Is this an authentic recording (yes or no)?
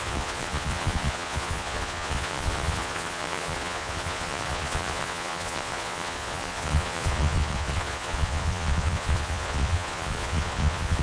no